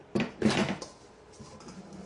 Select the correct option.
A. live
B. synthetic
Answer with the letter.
A